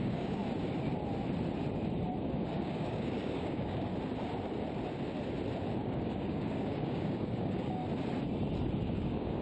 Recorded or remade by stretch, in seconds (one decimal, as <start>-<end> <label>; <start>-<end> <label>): 0.0-0.4 remade; 0.4-2.2 recorded; 2.2-3.9 remade; 3.9-5.8 recorded; 5.8-7.8 remade; 7.8-8.8 recorded; 8.8-9.4 remade